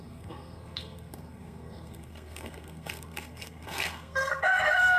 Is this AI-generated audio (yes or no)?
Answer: yes